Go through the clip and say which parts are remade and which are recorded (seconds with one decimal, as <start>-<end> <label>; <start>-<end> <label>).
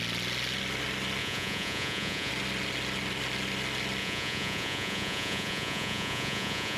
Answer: 0.0-1.2 recorded; 1.2-2.3 remade; 2.3-4.0 recorded; 4.0-6.8 remade